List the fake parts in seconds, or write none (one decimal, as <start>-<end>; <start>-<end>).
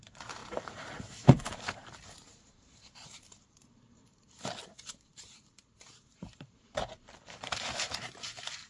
0.0-8.7